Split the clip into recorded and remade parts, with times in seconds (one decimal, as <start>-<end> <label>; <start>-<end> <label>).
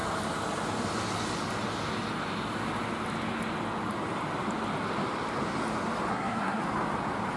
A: 0.0-6.1 recorded; 6.1-6.6 remade; 6.6-7.4 recorded